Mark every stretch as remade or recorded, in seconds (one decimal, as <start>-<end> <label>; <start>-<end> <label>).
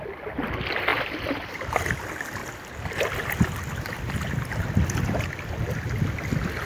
0.0-6.7 recorded